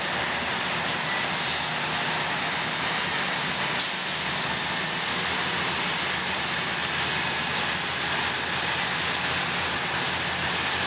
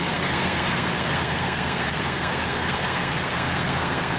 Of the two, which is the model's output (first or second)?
second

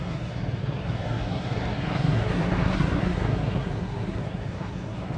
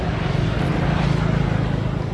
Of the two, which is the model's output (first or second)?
first